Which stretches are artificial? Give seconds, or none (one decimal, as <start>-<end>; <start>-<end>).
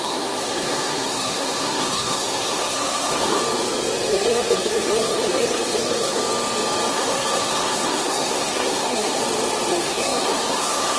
0.0-3.4; 4.1-6.2; 6.9-9.2; 9.7-11.0